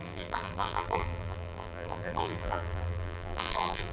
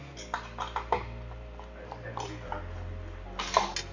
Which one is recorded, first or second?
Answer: second